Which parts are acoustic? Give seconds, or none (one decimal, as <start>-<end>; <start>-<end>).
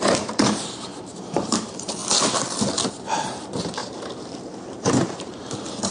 2.0-2.9